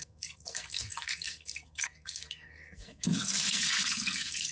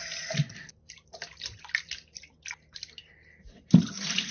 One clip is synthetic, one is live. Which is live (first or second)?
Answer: second